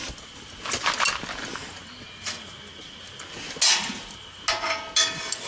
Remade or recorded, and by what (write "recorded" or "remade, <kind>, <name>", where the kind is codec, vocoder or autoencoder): recorded